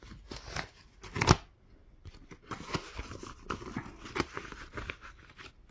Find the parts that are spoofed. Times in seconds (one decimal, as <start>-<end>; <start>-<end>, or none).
none